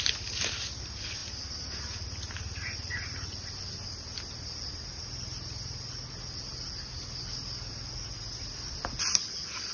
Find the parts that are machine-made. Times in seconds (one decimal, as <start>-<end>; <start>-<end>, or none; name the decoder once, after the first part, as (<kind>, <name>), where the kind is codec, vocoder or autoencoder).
none